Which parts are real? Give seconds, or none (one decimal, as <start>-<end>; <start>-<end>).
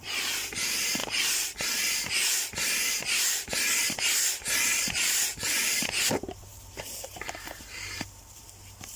1.0-4.8